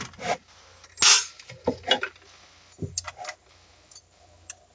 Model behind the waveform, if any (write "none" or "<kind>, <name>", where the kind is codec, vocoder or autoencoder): none